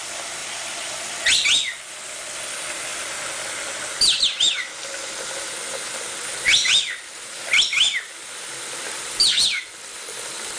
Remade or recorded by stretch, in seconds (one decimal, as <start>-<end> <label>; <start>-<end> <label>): 0.0-0.4 recorded; 0.4-0.9 remade; 0.9-10.6 recorded